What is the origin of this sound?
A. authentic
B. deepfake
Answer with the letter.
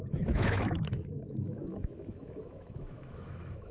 B